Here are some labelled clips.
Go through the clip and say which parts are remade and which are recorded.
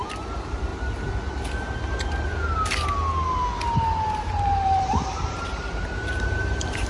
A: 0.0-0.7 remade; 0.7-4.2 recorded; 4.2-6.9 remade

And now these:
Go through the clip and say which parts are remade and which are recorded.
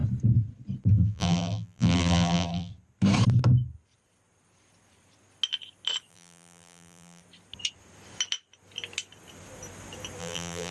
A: 0.0-0.9 recorded; 0.9-2.7 remade; 2.7-6.1 recorded; 6.1-7.2 remade; 7.2-10.2 recorded; 10.2-10.7 remade